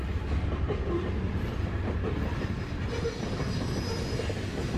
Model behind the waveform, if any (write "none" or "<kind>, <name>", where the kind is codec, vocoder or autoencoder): none